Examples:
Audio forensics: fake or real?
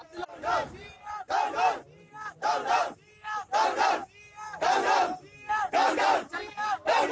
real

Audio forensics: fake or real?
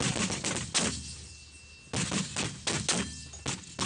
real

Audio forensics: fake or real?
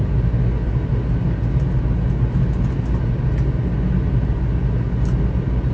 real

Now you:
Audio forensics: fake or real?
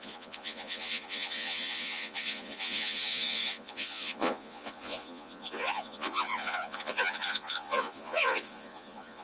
fake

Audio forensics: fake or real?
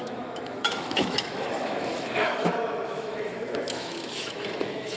fake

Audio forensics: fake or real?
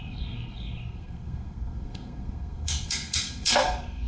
fake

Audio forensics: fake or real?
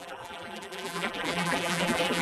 fake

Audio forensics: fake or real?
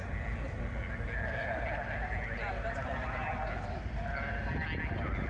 real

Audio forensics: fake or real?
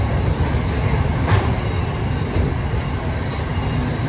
real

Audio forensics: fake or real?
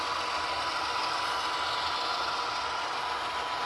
real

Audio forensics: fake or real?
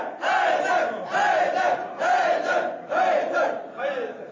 real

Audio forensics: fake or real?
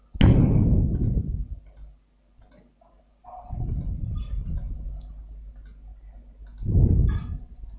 real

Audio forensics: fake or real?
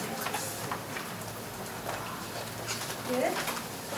real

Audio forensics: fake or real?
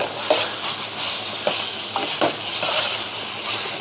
real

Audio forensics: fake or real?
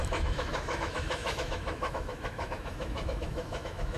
fake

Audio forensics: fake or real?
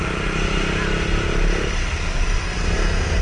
real